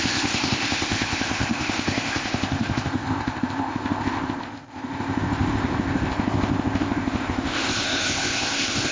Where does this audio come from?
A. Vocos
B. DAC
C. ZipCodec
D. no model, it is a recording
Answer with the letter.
C